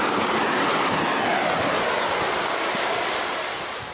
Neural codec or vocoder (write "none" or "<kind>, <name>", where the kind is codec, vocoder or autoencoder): none